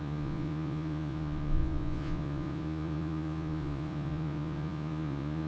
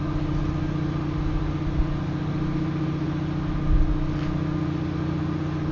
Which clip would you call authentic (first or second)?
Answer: second